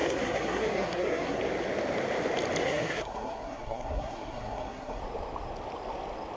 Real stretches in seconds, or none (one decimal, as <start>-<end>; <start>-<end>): 1.4-2.6; 5.0-6.4